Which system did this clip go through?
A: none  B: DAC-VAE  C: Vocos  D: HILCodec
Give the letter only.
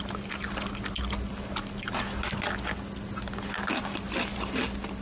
A